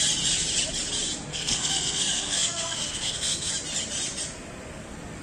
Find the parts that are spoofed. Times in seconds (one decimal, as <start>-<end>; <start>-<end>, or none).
1.3-3.5